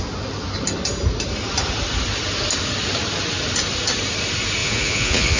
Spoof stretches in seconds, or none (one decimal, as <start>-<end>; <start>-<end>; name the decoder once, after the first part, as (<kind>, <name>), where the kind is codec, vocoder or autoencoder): 4.6-5.4 (vocoder, Vocos)

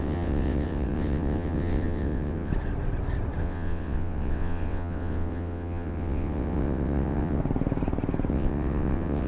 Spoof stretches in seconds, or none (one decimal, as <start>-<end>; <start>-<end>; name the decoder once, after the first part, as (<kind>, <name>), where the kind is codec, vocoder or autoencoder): 0.0-2.5 (vocoder, WaveNeXt); 3.4-7.4; 8.3-9.3

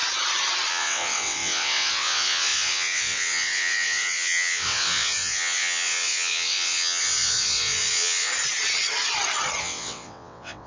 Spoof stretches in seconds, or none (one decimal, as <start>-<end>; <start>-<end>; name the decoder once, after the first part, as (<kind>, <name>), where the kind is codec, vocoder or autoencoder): 0.7-8.3 (vocoder, WaveNeXt); 9.6-10.7

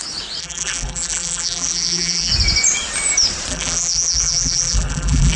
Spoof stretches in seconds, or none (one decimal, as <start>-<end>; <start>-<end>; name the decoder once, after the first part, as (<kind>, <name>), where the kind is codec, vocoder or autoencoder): 0.4-2.3 (vocoder, BigVGAN v2); 3.5-5.4

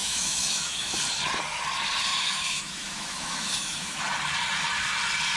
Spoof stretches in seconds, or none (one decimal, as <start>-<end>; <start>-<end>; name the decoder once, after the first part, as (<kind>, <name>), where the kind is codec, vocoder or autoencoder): 0.0-1.0 (autoencoder, DAC-VAE); 2.1-4.0